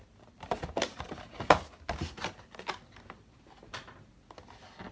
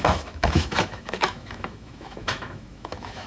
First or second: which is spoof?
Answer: second